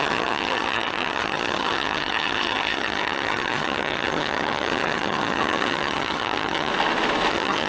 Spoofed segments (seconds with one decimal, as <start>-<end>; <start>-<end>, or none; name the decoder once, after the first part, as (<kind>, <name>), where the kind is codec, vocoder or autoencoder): 0.0-6.7 (vocoder, HiFi-GAN); 7.3-7.7

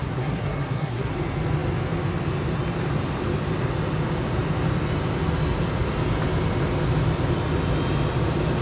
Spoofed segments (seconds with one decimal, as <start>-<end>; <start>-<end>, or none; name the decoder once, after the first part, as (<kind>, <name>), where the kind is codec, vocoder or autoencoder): 0.0-1.1 (codec, SNAC)

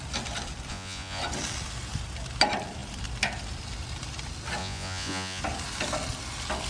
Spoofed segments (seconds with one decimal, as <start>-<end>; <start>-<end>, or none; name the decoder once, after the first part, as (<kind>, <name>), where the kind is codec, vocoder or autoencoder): 0.7-1.2 (vocoder, Vocos); 4.6-5.4

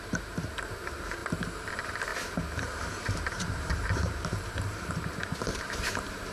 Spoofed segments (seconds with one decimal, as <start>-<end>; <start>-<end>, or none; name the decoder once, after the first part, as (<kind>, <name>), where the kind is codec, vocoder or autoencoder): 0.0-6.3 (vocoder, BigVGAN v2)

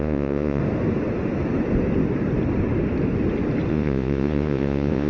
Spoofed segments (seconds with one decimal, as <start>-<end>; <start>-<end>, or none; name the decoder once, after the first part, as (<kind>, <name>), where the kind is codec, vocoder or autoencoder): 0.0-0.6 (vocoder, Vocos); 3.7-5.1

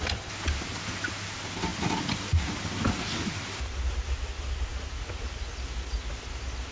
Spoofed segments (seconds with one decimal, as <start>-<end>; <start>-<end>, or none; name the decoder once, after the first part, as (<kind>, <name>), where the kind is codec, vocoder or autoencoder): none

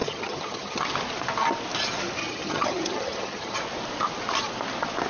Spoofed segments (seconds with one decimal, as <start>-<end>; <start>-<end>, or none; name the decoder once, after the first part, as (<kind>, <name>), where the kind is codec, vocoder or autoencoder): 0.0-0.9 (vocoder, HiFi-GAN); 2.2-3.6